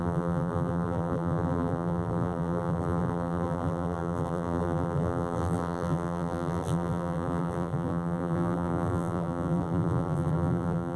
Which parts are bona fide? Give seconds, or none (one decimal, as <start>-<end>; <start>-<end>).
none